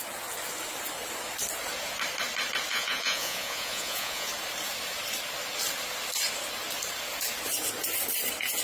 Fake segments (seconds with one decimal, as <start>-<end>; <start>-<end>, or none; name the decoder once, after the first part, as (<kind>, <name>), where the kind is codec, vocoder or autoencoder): 2.7-4.3 (vocoder, Vocos)